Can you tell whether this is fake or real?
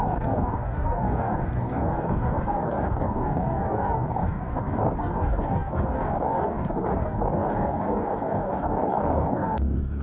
fake